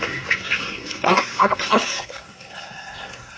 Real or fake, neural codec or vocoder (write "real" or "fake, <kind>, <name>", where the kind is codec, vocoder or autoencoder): fake, codec, SNAC